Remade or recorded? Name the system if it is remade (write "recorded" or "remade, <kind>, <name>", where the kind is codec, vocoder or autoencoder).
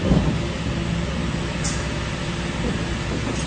recorded